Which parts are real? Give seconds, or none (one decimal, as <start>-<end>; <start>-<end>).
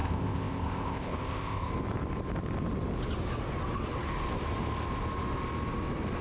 1.7-6.2